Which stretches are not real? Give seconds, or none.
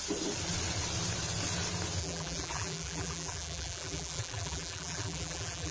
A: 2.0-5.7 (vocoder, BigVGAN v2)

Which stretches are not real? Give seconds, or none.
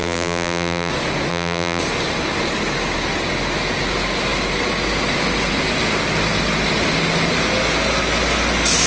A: 0.0-0.9 (vocoder, BigVGAN v2); 1.3-1.8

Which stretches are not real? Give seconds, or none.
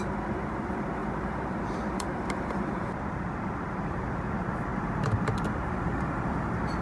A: 0.0-6.8 (vocoder, BigVGAN v2)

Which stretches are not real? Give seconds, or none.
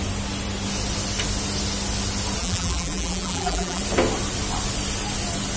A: 2.4-3.8 (vocoder, BigVGAN v2)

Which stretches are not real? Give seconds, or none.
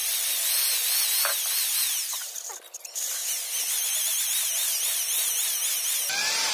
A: 3.2-6.5 (vocoder, BigVGAN v2)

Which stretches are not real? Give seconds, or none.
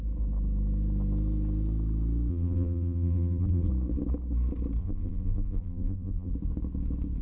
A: 2.3-3.7 (vocoder, BigVGAN v2); 4.8-6.3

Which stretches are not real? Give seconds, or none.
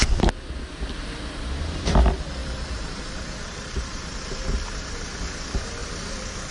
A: 2.4-4.0 (vocoder, BigVGAN v2)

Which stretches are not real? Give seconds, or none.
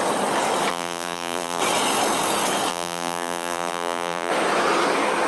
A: 0.7-1.6 (vocoder, BigVGAN v2); 2.7-4.3